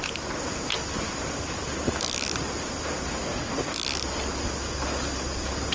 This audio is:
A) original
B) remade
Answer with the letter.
B